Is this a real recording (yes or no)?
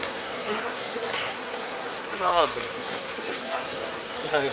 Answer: no